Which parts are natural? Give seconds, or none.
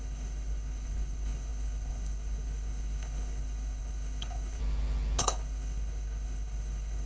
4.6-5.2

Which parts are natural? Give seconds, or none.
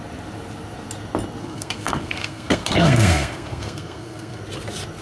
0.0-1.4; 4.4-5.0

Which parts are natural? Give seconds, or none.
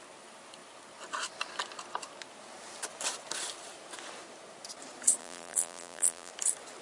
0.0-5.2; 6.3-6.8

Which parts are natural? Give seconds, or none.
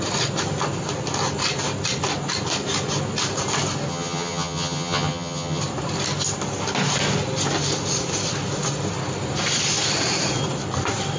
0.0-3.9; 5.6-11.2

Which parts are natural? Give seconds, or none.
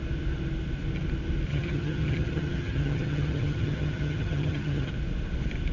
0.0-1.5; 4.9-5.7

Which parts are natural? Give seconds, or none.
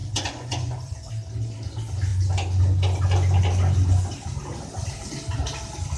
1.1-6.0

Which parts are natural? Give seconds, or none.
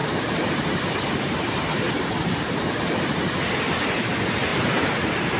2.6-4.5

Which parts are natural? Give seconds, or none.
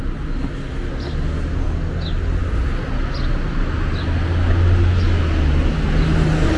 0.0-6.6